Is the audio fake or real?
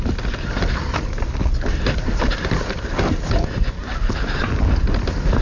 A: real